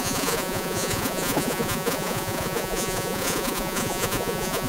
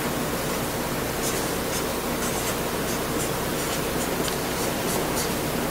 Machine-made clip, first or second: first